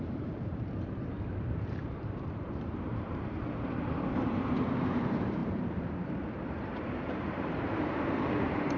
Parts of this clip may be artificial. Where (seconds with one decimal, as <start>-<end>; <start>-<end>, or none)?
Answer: 0.0-8.8